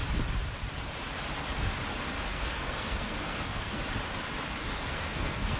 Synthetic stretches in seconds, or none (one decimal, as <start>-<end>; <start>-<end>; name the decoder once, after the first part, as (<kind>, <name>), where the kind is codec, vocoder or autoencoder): 2.3-3.8 (codec, SNAC); 4.6-5.6